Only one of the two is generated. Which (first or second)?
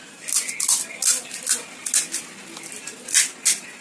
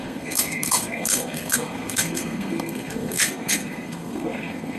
second